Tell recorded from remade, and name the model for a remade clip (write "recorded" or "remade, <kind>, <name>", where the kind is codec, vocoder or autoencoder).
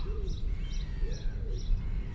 recorded